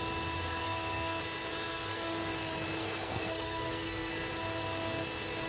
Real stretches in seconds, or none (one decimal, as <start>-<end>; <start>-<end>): 0.0-0.6; 1.2-1.7; 2.3-2.8; 4.1-5.5